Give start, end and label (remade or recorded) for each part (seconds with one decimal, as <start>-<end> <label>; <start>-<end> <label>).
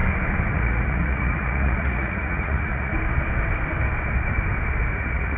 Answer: 0.0-0.5 recorded; 0.5-2.9 remade; 2.9-4.9 recorded; 4.9-5.4 remade